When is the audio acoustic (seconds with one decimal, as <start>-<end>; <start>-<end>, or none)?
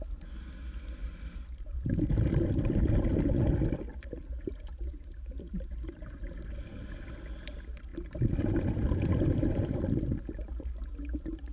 0.0-1.0; 2.8-3.9; 6.6-7.9; 9.8-11.5